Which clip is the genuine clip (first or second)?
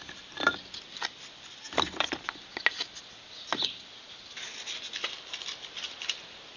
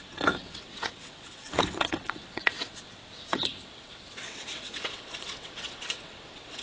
first